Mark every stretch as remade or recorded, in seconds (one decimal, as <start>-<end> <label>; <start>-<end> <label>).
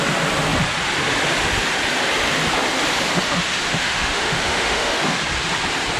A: 0.0-3.7 recorded; 3.7-5.0 remade; 5.0-6.0 recorded